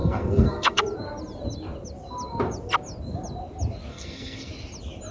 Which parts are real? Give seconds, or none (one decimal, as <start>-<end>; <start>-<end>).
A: 0.8-3.9; 4.5-5.1